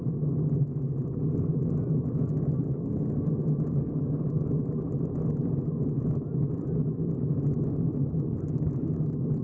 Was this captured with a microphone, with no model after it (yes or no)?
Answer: yes